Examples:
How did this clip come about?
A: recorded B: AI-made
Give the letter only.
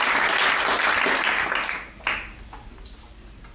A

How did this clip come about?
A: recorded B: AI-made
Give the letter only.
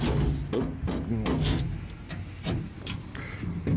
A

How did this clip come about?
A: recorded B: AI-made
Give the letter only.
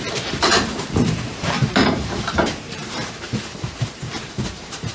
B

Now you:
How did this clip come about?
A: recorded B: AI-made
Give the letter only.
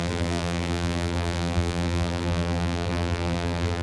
B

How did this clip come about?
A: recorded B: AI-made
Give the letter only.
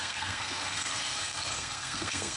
B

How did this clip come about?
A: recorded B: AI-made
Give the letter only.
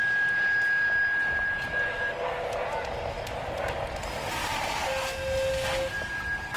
A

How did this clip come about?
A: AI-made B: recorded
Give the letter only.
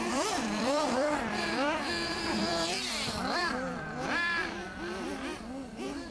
A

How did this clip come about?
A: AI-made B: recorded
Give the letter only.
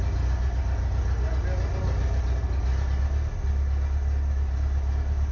B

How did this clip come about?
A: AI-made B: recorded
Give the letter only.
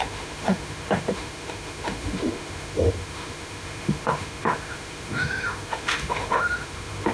A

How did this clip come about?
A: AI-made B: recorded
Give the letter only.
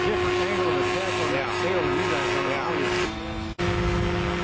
B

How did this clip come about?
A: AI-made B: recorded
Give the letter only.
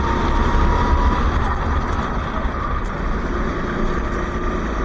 B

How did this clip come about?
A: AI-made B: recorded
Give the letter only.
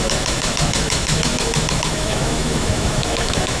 A